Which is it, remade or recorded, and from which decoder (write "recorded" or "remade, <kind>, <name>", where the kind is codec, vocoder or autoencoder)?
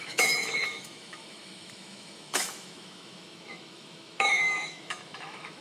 remade, autoencoder, DAC-VAE